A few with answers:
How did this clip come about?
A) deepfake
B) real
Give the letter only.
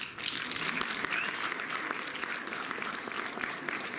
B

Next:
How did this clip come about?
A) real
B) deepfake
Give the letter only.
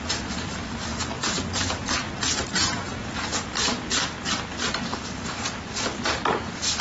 B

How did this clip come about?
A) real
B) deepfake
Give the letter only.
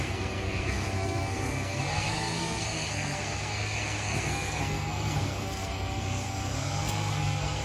B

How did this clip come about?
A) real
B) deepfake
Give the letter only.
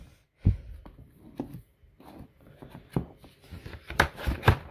A